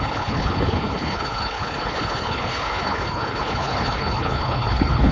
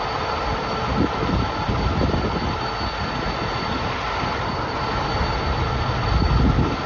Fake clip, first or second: first